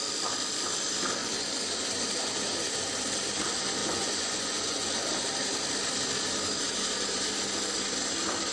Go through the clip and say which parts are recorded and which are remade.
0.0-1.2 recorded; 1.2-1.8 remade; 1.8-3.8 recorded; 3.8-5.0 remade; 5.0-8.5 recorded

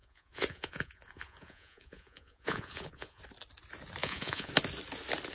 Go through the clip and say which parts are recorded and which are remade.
0.0-3.2 remade; 3.2-4.0 recorded; 4.0-4.5 remade; 4.5-5.3 recorded

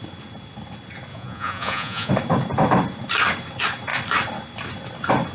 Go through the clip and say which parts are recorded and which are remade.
0.0-1.1 recorded; 1.1-2.1 remade; 2.1-5.3 recorded

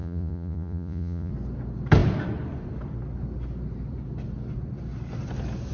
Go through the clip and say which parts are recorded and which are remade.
0.0-1.3 remade; 1.3-5.7 recorded

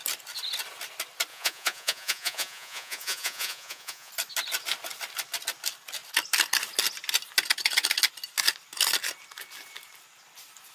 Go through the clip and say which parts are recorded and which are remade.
0.0-1.3 recorded; 1.3-4.1 remade; 4.1-10.7 recorded

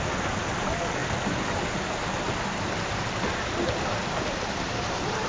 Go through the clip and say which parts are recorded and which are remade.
0.0-5.3 recorded